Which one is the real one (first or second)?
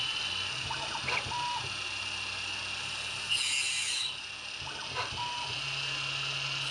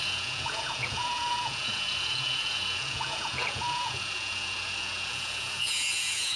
first